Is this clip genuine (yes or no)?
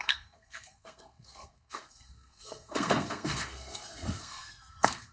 no